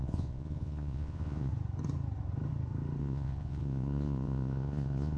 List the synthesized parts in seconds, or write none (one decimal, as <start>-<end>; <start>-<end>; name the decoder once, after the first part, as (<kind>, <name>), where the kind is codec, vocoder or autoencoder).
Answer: 0.0-1.5 (vocoder, Vocos); 3.0-5.2